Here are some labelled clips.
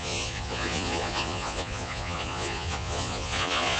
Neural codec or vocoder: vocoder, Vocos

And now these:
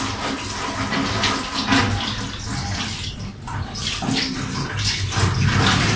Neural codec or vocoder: none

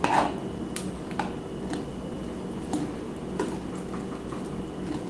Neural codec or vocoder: none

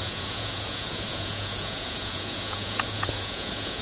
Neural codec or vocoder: vocoder, Vocos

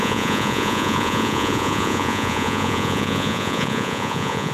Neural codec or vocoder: vocoder, Vocos